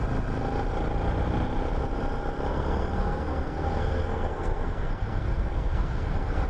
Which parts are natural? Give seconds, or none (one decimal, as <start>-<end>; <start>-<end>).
0.0-2.5